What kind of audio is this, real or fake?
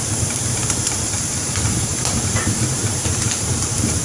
fake